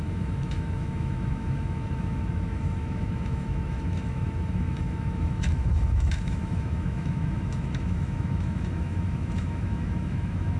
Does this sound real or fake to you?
fake